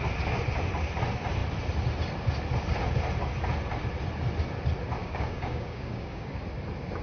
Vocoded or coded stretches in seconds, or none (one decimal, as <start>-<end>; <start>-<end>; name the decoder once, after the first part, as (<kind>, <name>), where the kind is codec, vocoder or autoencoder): 5.0-6.4 (codec, DAC)